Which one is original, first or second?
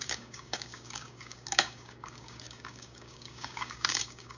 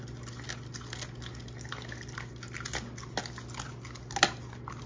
second